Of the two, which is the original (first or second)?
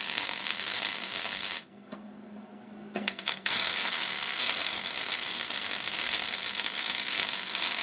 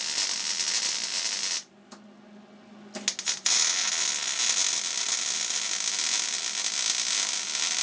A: second